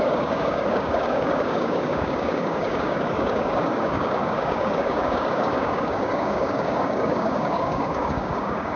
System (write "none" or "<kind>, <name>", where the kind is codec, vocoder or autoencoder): codec, DAC